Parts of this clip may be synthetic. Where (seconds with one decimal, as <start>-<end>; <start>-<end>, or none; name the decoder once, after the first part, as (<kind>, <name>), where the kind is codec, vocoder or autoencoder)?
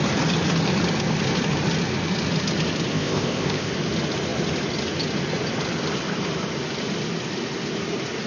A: 2.9-3.7 (codec, ZipCodec)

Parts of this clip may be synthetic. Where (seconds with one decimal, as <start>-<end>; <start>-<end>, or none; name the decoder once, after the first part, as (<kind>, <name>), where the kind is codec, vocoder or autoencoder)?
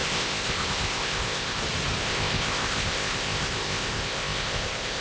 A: 0.0-1.6 (codec, ZipCodec); 2.0-5.0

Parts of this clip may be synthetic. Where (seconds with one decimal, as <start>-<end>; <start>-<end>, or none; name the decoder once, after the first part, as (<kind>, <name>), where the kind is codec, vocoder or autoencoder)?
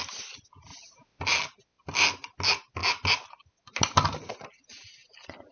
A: none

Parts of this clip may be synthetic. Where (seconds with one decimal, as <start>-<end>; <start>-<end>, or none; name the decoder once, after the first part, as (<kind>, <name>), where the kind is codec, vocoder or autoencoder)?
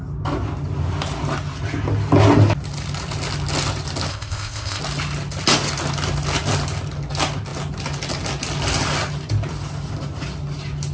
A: 4.1-4.8 (codec, ZipCodec)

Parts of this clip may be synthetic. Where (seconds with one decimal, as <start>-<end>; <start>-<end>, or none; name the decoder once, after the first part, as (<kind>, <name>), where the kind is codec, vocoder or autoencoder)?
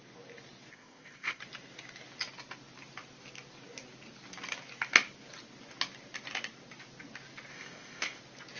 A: 0.7-1.4 (codec, ZipCodec); 7.5-8.2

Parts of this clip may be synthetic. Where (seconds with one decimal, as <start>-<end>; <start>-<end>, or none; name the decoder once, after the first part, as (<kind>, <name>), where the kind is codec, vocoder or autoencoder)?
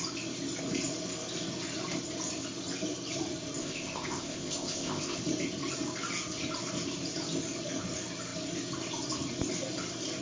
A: 3.6-5.2 (codec, ZipCodec)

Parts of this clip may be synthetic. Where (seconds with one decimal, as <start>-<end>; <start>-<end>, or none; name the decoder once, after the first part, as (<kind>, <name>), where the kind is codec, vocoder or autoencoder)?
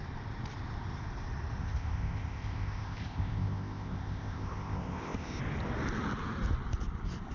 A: 1.6-5.4 (codec, ZipCodec)